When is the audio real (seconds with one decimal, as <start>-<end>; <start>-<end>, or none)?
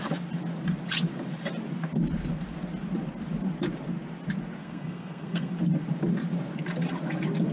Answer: 0.0-4.6; 5.5-7.5